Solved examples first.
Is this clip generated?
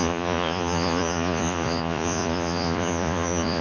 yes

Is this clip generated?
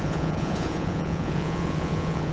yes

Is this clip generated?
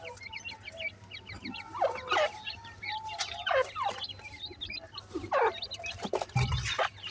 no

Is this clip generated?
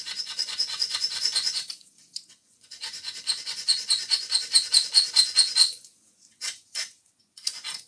yes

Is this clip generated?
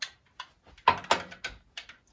no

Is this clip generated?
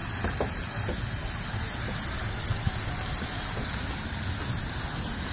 no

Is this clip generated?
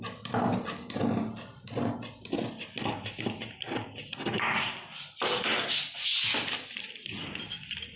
no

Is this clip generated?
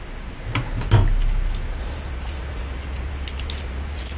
no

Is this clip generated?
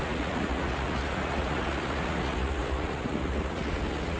yes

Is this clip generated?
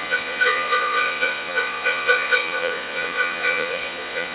yes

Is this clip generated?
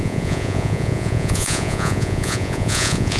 yes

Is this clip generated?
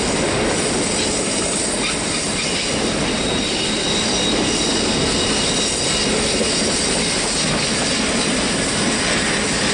no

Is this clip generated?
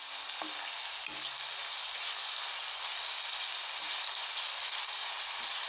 no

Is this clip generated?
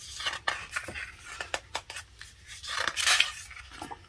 no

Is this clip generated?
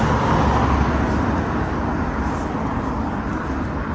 no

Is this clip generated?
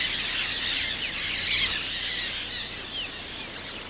no